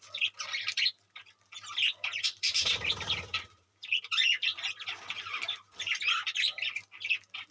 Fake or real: fake